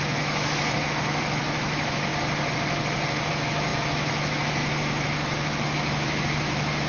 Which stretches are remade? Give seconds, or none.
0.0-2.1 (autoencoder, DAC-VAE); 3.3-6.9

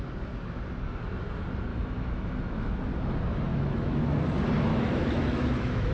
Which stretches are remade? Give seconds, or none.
1.7-2.7 (autoencoder, DAC-VAE); 3.5-4.3; 4.7-5.9

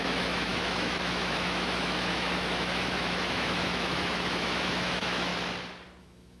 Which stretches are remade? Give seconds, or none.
0.0-5.3 (autoencoder, DAC-VAE); 6.0-6.4

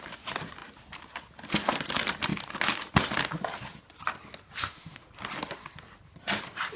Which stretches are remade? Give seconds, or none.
4.6-5.1 (autoencoder, DAC-VAE)

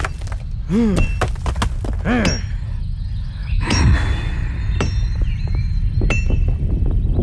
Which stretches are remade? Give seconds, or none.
3.4-3.9 (autoencoder, DAC-VAE)

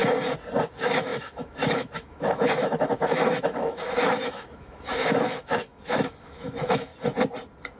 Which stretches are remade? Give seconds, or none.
0.7-6.9 (autoencoder, DAC-VAE)

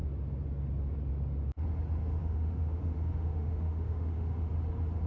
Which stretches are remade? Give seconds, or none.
2.2-4.5 (autoencoder, DAC-VAE)

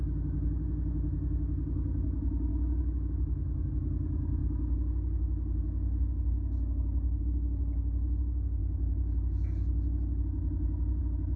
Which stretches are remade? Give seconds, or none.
2.5-3.7 (autoencoder, DAC-VAE)